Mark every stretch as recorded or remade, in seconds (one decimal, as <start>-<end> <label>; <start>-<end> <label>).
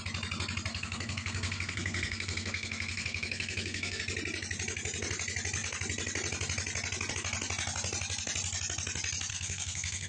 0.0-0.7 recorded; 0.7-4.0 remade; 4.0-9.3 recorded; 9.3-10.1 remade